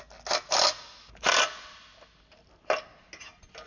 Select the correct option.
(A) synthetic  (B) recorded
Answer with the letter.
B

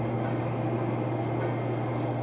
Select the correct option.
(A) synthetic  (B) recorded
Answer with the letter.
B